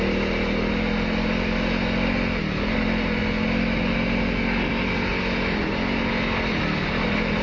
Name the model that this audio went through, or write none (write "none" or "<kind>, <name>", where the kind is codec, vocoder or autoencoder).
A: none